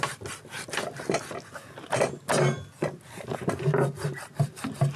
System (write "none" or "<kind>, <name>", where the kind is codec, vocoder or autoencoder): none